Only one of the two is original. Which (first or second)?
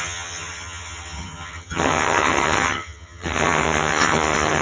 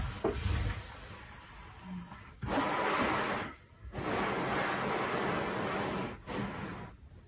second